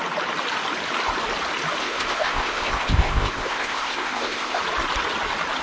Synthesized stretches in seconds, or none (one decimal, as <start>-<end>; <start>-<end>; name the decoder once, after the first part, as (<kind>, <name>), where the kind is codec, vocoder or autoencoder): 1.8-4.6 (codec, ZipCodec)